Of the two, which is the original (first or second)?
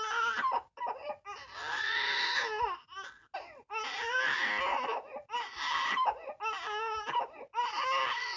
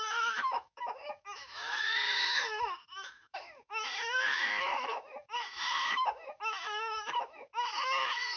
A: first